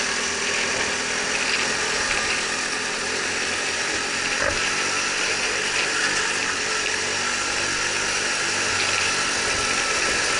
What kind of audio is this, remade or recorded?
recorded